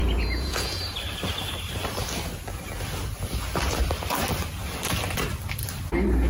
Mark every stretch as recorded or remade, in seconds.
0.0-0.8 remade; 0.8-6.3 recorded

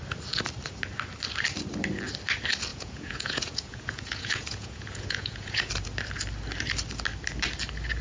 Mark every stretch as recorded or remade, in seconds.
0.0-2.7 recorded; 2.7-5.7 remade; 5.7-8.0 recorded

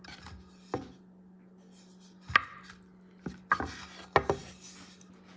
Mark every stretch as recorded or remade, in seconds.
0.0-5.4 recorded

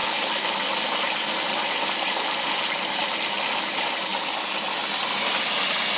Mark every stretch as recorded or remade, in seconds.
0.0-6.0 recorded

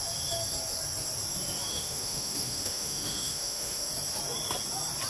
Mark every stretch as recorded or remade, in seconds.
0.0-1.7 recorded; 1.7-3.9 remade; 3.9-5.1 recorded

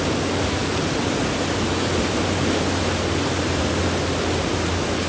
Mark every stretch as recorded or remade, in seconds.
0.0-5.1 recorded

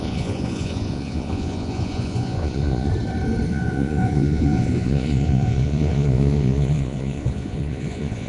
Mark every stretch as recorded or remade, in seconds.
0.0-2.9 remade; 2.9-3.5 recorded; 3.5-8.3 remade

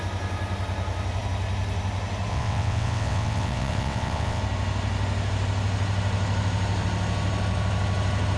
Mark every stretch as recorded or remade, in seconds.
0.0-2.3 recorded; 2.3-4.4 remade; 4.4-8.4 recorded